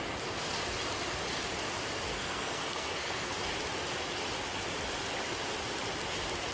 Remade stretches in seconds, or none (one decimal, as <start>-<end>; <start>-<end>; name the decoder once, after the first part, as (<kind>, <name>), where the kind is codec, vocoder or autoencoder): 2.1-3.3 (codec, SNAC)